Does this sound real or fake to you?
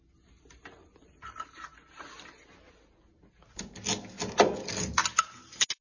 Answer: real